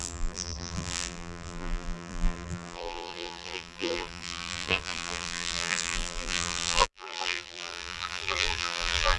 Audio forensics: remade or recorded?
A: remade